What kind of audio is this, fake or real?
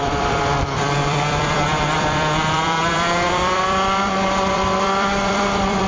fake